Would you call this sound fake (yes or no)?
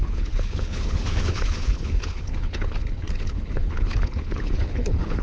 yes